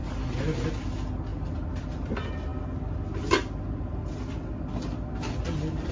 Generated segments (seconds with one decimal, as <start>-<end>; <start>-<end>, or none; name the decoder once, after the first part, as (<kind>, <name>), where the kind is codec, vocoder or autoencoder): none